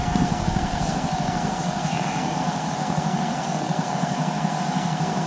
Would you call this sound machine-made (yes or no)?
yes